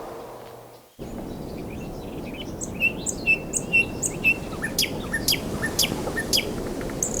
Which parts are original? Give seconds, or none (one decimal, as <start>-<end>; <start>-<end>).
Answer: 0.0-7.2